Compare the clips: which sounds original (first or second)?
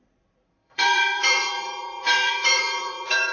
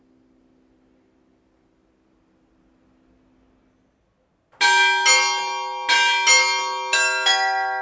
second